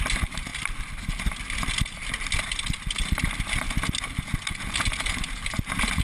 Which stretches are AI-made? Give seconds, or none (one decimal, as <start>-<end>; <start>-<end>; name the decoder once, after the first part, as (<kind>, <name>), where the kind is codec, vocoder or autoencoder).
none